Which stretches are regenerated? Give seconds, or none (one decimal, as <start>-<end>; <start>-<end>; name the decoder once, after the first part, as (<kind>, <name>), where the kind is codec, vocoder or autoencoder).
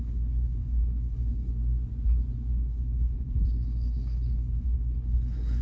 0.0-1.5 (codec, HILCodec); 2.5-5.6